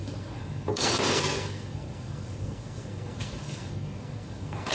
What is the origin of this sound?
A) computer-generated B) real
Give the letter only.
A